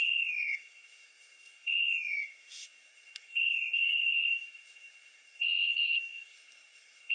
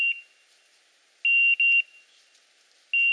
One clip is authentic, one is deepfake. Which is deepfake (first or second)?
first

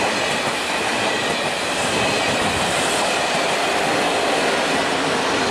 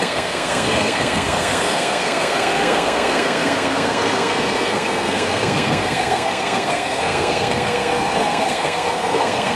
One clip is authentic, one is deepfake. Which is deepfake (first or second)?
second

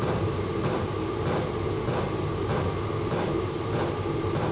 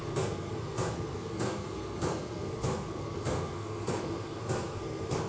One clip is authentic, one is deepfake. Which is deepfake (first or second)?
second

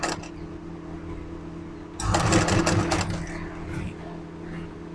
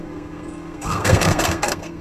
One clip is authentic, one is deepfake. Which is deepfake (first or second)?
second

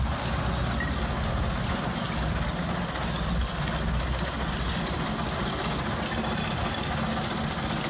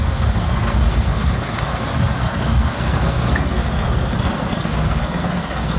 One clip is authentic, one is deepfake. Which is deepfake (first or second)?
second